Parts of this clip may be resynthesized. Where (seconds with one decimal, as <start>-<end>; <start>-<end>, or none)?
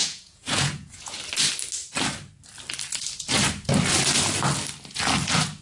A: 0.0-1.2